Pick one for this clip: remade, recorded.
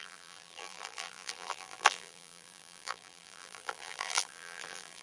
remade